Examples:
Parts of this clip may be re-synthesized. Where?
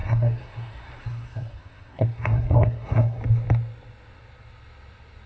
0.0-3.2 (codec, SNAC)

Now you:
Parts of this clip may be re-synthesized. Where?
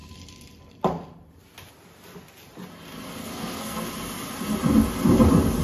3.2-3.9 (codec, SNAC)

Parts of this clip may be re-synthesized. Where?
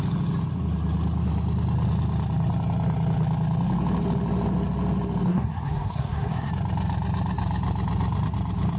5.3-6.5 (codec, SNAC)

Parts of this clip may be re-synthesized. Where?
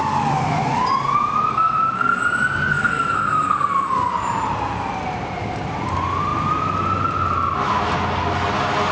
1.5-2.2 (codec, SNAC); 2.7-4.1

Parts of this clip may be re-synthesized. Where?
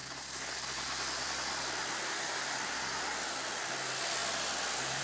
none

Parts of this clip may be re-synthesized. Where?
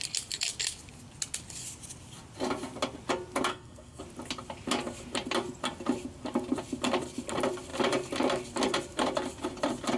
3.5-4.0 (codec, SNAC)